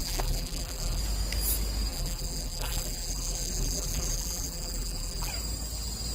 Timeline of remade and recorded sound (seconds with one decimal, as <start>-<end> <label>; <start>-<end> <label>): 0.0-1.0 remade; 1.0-1.9 recorded; 1.9-5.3 remade; 5.3-6.1 recorded